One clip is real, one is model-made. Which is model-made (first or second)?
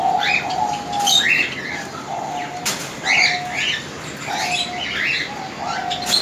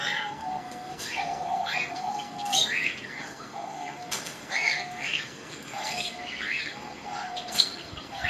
second